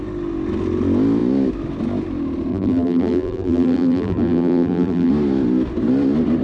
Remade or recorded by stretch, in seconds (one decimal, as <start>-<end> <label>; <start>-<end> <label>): 0.0-2.5 recorded; 2.5-5.1 remade; 5.1-6.4 recorded